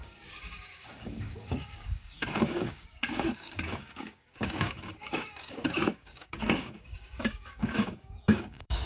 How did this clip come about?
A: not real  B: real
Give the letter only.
A